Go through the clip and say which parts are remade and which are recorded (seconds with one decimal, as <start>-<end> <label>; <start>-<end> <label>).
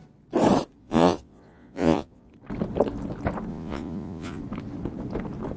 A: 0.0-0.8 recorded; 0.8-2.3 remade; 2.3-3.5 recorded; 3.5-4.4 remade; 4.4-5.6 recorded